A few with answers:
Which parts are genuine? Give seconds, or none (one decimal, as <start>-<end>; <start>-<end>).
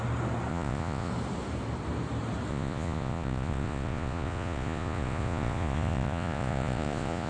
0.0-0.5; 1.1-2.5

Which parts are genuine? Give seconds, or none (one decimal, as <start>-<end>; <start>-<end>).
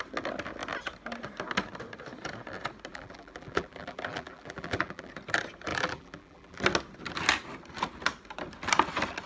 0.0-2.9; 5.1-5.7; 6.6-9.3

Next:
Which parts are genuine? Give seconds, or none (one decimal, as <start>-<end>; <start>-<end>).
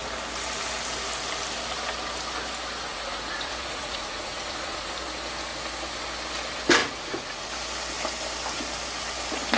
0.0-2.9; 4.9-6.8; 7.5-9.6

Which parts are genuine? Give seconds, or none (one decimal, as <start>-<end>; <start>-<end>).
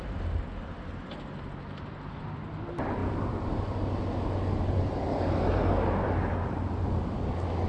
0.0-7.7